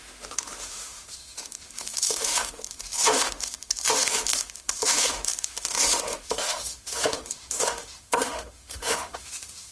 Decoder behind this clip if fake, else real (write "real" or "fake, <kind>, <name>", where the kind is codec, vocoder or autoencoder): fake, autoencoder, DAC-VAE